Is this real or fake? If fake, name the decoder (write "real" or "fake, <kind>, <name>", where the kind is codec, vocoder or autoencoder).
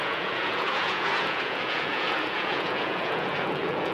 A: fake, vocoder, Vocos